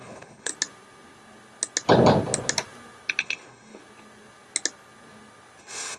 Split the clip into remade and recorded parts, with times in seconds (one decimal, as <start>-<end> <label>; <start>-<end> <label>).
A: 0.0-0.5 remade; 0.5-3.2 recorded; 3.2-3.8 remade; 3.8-5.6 recorded; 5.6-6.0 remade